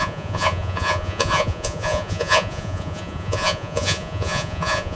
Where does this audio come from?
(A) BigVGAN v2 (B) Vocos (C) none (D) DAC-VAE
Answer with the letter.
B